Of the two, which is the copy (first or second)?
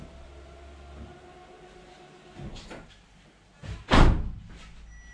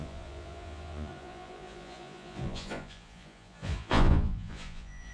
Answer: second